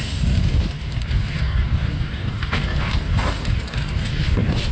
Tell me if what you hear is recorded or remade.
remade